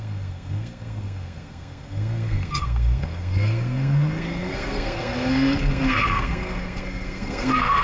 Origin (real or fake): fake